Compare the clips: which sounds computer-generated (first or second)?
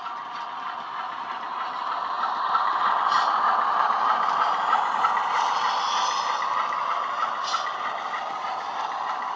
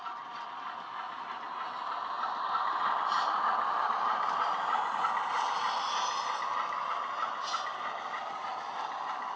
first